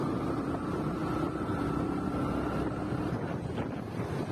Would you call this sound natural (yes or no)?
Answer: yes